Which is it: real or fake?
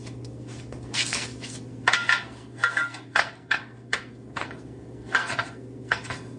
fake